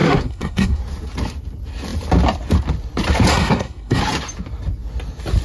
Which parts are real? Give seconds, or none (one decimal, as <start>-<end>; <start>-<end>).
0.8-3.3; 4.0-5.4